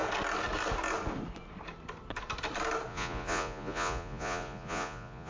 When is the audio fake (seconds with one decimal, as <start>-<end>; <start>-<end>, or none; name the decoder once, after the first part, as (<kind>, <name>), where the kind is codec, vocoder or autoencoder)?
2.9-5.3 (vocoder, Vocos)